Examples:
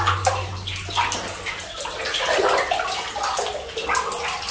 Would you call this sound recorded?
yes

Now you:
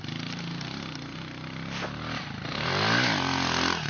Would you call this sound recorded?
yes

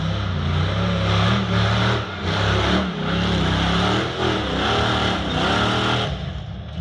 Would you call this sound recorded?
yes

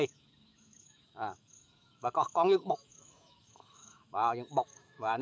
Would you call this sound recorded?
no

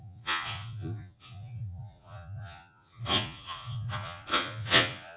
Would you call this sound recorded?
no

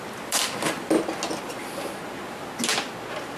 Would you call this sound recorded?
yes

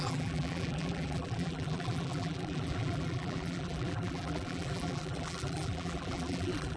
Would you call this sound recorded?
no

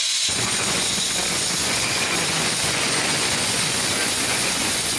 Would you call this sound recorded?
no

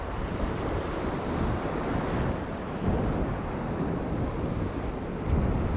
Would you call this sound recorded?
yes